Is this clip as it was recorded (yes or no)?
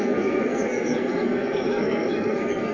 no